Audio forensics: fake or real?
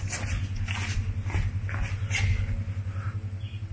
real